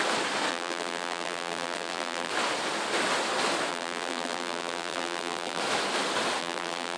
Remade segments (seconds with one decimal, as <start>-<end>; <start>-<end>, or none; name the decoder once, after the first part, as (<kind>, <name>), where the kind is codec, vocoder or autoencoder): 0.5-2.3 (vocoder, BigVGAN v2); 3.7-5.6; 6.4-7.0